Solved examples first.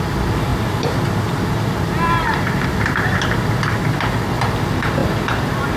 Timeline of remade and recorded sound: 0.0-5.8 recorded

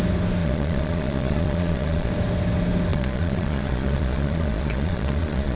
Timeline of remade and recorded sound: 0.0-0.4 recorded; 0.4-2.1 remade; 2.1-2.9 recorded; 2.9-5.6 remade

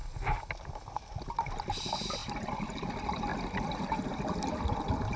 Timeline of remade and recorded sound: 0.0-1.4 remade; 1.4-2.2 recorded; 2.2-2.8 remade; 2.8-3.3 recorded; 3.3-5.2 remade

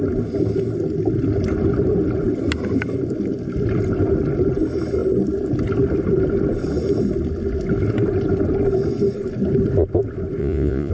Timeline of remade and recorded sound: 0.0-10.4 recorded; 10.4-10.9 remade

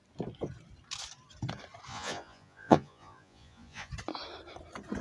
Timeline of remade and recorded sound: 0.0-1.9 recorded; 1.9-3.9 remade; 3.9-5.0 recorded

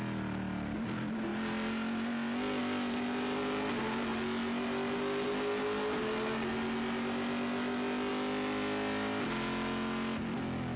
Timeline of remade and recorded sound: 0.0-10.8 recorded

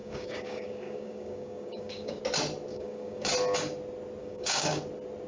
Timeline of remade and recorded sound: 0.0-2.2 remade; 2.2-2.7 recorded; 2.7-3.3 remade; 3.3-4.2 recorded; 4.2-4.8 remade; 4.8-5.3 recorded

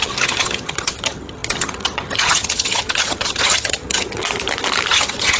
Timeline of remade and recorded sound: 0.0-4.2 remade; 4.2-4.9 recorded; 4.9-5.4 remade